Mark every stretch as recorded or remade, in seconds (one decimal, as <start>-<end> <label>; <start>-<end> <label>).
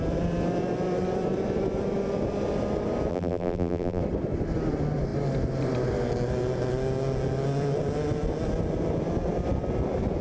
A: 0.0-3.1 recorded; 3.1-4.0 remade; 4.0-10.2 recorded